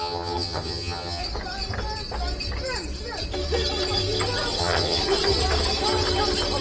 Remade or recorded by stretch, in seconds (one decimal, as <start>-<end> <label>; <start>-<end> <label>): 0.0-1.2 remade; 1.2-4.6 recorded; 4.6-5.0 remade; 5.0-6.6 recorded